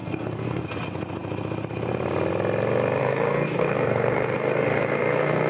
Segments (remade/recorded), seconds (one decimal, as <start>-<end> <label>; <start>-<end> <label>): 0.0-0.6 remade; 0.6-3.0 recorded; 3.0-5.5 remade